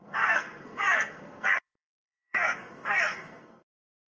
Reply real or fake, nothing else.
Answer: fake